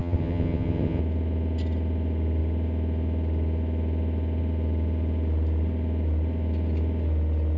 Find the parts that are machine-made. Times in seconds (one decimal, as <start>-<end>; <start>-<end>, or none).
0.0-1.0